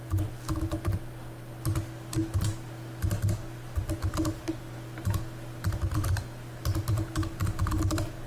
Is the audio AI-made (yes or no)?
no